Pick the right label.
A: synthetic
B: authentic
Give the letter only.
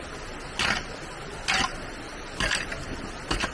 B